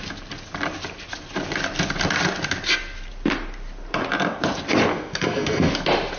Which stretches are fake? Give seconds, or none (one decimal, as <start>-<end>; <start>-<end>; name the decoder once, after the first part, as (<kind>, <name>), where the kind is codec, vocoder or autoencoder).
4.9-5.7 (codec, SNAC)

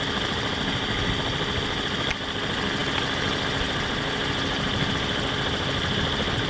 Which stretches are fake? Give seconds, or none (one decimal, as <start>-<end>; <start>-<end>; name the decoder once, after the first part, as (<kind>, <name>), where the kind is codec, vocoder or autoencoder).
none